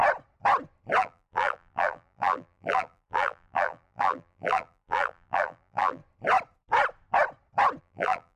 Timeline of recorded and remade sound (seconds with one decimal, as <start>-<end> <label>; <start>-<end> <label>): 0.0-1.0 recorded; 1.0-6.0 remade; 6.0-7.8 recorded; 7.8-8.4 remade